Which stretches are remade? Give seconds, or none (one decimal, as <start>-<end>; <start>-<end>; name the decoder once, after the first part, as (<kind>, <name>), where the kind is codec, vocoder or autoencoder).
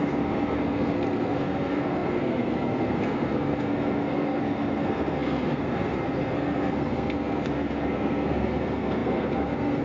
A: 0.0-9.8 (codec, SNAC)